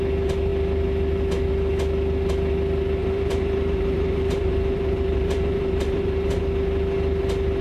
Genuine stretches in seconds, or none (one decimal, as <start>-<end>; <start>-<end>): 0.0-3.0; 6.4-7.6